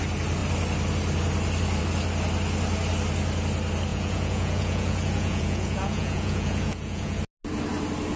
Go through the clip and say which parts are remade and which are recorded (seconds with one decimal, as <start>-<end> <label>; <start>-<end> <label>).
0.0-3.9 recorded; 3.9-7.2 remade; 7.2-8.2 recorded